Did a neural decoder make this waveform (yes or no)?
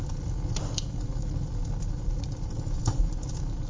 no